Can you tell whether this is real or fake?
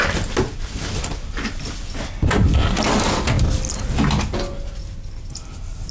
real